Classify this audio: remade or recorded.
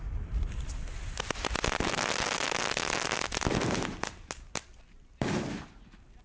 recorded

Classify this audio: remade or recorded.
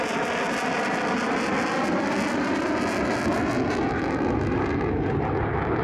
recorded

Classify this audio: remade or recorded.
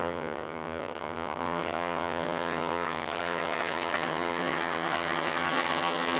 remade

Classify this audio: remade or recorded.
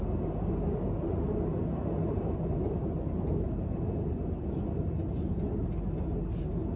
recorded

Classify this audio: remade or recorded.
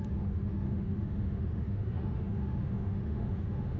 remade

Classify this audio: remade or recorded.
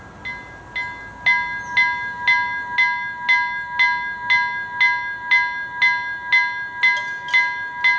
recorded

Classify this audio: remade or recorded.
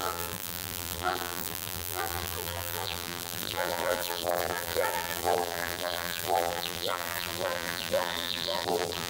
remade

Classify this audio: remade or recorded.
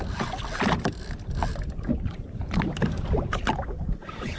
recorded